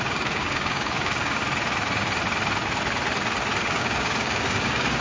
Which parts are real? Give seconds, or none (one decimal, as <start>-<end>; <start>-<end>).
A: 1.4-3.6